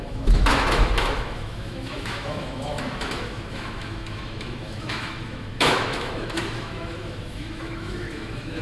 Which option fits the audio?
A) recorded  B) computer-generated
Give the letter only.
B